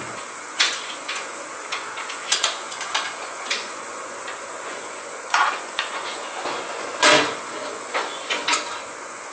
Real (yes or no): no